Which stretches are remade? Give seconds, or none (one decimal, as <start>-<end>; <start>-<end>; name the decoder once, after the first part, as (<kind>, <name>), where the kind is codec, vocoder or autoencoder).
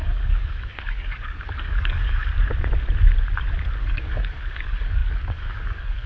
0.0-2.2 (codec, DAC); 3.8-6.1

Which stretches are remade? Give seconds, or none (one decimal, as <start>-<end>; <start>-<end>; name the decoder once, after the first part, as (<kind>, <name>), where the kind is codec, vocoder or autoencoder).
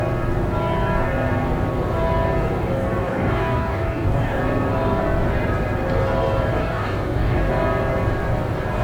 3.0-4.4 (codec, DAC); 6.6-7.5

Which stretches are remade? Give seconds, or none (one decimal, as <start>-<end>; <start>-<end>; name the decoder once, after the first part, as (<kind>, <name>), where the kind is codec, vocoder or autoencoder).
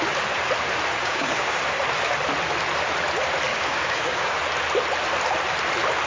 1.0-1.6 (codec, DAC); 3.5-4.4